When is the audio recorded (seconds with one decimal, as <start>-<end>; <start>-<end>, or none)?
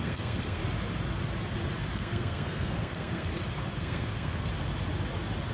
0.6-1.9; 3.3-3.8; 4.5-5.5